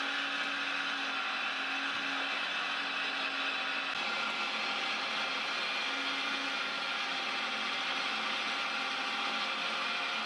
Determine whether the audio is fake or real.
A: real